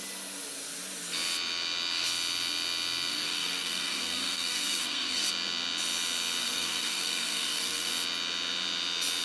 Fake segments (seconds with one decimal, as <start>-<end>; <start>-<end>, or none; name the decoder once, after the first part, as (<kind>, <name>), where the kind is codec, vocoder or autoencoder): 3.1-5.3 (codec, SNAC); 6.4-7.9